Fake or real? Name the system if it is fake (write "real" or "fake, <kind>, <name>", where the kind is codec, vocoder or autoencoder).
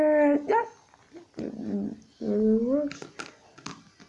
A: real